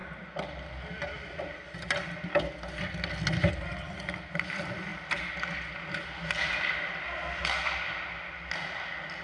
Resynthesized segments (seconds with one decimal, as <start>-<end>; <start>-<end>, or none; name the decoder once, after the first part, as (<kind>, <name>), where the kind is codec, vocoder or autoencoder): none